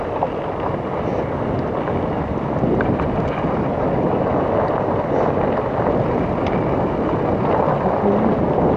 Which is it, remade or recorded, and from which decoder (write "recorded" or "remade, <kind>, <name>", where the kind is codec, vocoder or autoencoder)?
recorded